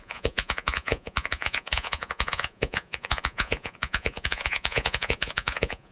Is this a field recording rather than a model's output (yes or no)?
no